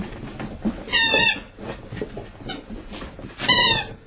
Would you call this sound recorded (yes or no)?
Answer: yes